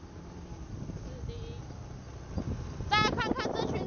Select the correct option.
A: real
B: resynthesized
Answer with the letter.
A